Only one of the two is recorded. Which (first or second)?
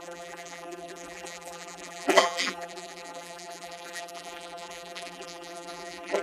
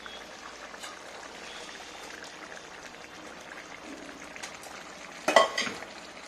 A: second